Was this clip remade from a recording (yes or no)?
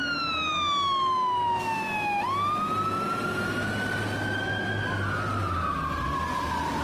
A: no